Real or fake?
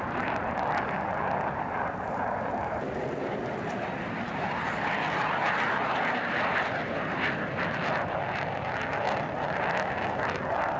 real